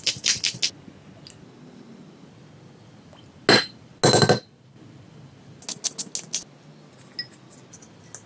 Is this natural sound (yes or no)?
yes